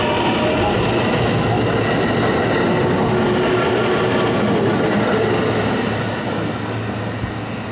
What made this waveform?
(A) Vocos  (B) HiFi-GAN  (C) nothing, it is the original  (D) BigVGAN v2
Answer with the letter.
C